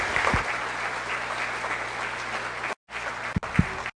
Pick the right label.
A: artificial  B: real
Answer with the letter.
B